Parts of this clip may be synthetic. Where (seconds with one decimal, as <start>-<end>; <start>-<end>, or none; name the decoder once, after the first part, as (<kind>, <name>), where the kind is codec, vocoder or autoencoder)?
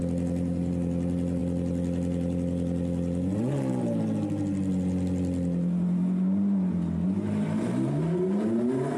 none